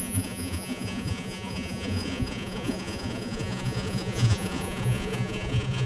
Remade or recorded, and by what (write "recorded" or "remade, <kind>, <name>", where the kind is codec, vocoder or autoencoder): remade, vocoder, Vocos